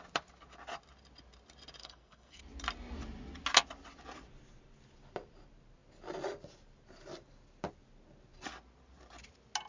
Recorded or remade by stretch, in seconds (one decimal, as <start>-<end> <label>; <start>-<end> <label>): 0.0-1.8 recorded; 1.8-2.4 remade; 2.4-9.7 recorded